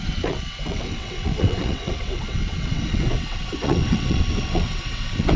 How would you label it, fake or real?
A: fake